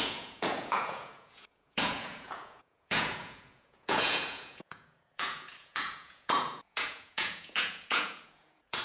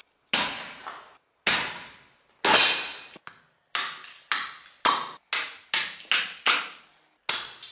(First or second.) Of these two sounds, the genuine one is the second